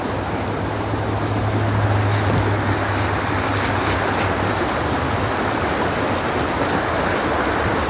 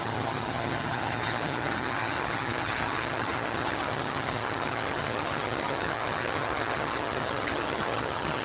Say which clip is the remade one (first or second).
second